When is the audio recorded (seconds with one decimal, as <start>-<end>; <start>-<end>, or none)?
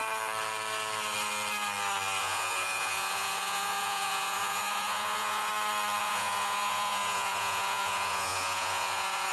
0.0-2.2; 5.5-6.0